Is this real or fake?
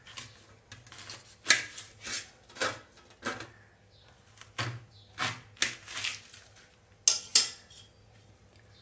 real